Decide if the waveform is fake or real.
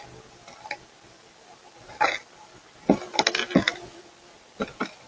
real